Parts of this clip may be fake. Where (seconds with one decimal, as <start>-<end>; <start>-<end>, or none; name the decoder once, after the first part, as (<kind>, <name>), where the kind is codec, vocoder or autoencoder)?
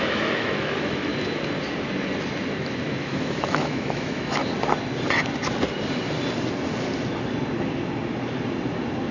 0.0-1.1 (autoencoder, DAC-VAE); 2.9-4.4